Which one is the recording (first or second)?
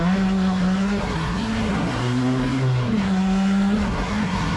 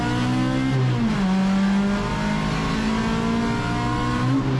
second